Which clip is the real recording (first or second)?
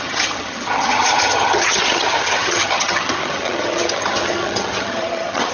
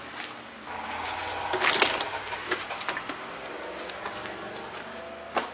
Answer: second